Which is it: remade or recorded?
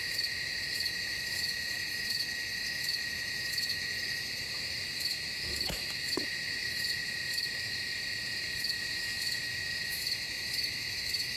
remade